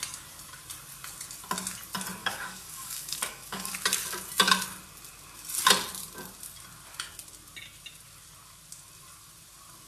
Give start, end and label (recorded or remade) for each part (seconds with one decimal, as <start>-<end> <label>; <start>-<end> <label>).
0.0-2.2 recorded; 2.2-3.7 remade; 3.7-9.9 recorded